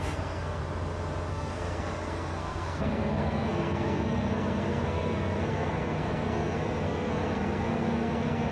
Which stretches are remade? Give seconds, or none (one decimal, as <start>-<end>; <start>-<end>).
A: 0.0-0.6; 1.3-8.5